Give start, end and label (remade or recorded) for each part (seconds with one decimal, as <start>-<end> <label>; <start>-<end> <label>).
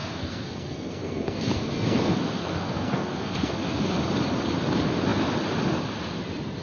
0.0-4.0 remade; 4.0-6.6 recorded